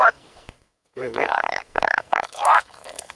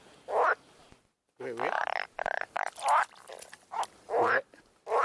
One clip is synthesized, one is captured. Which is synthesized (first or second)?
first